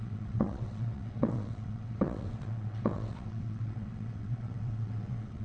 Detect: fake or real fake